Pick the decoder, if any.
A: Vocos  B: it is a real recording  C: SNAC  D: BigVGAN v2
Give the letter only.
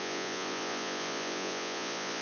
A